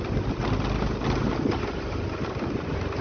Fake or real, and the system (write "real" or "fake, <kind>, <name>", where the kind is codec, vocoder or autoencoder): real